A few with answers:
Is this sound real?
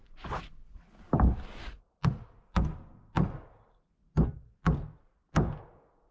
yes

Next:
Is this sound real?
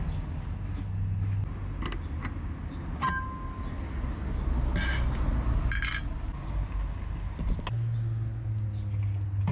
yes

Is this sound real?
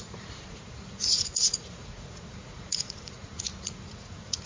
no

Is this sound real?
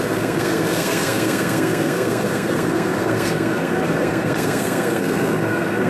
no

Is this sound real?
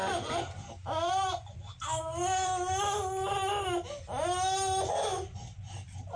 yes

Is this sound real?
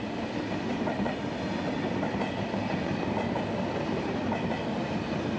yes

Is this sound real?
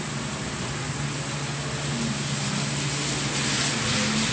yes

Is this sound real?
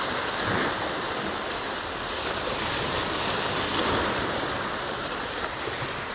yes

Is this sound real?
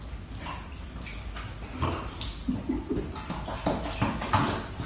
yes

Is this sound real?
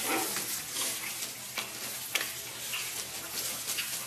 yes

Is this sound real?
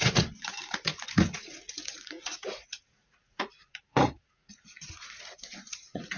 no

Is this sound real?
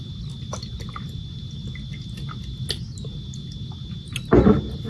yes